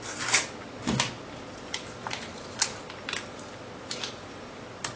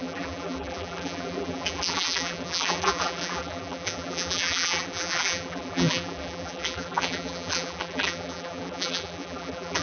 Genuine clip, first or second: first